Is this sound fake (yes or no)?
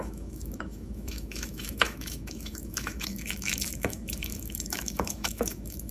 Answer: yes